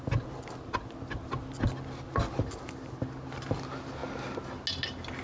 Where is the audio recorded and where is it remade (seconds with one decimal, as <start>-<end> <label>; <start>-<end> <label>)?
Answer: 0.0-5.2 recorded